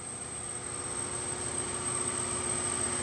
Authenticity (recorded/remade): recorded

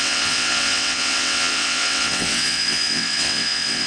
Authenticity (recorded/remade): remade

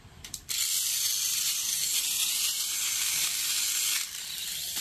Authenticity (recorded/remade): remade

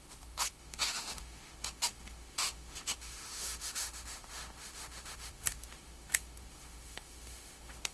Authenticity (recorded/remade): remade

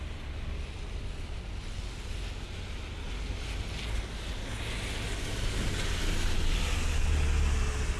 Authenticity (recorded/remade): recorded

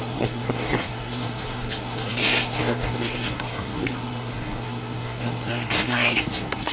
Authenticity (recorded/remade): remade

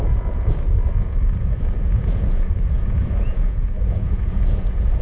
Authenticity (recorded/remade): remade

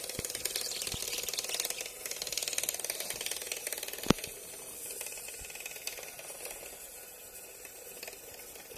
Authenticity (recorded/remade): recorded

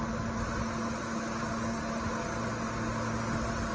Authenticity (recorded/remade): recorded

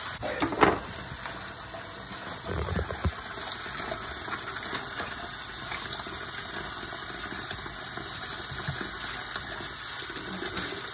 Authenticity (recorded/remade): recorded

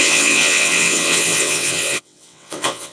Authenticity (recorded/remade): remade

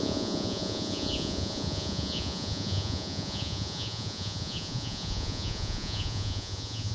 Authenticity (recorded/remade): remade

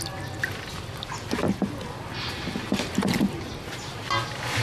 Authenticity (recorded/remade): recorded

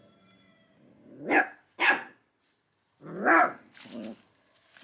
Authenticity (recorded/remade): recorded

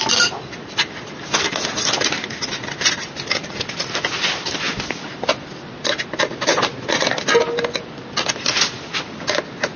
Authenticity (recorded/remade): recorded